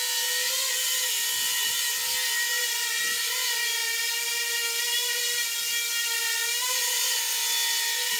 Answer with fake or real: real